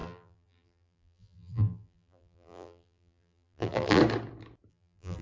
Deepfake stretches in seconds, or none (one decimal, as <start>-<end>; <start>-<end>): 0.0-4.0; 4.7-5.2